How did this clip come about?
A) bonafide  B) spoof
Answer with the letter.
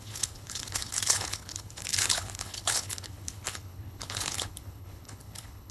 B